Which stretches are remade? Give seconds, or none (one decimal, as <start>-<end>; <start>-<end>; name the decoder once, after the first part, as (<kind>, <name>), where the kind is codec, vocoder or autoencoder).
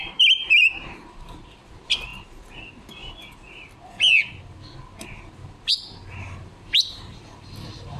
0.0-2.1 (vocoder, BigVGAN v2); 6.9-8.0